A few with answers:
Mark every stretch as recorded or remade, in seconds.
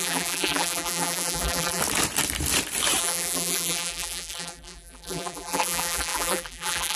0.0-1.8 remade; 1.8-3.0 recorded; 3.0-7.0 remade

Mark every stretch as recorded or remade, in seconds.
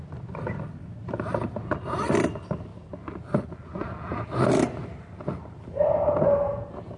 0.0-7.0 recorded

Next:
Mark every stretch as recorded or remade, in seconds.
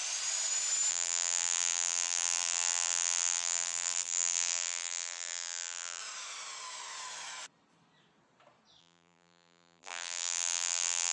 0.0-0.9 recorded; 0.9-6.0 remade; 6.0-8.8 recorded; 8.8-11.1 remade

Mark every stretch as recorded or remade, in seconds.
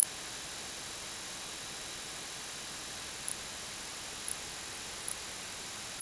0.0-6.0 recorded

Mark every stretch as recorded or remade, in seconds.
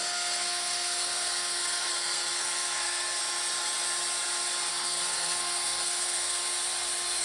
0.0-3.2 remade; 3.2-4.7 recorded; 4.7-6.4 remade; 6.4-7.2 recorded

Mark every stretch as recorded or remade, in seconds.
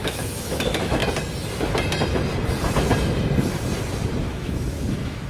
0.0-1.0 remade; 1.0-4.2 recorded; 4.2-5.3 remade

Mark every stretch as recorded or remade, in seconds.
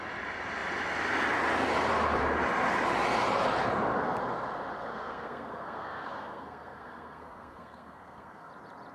0.0-4.8 recorded; 4.8-8.5 remade; 8.5-8.9 recorded